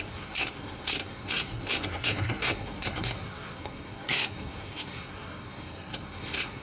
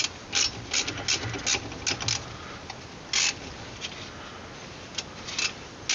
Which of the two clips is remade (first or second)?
first